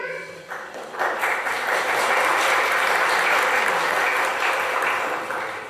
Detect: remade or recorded recorded